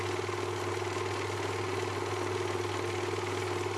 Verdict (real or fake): real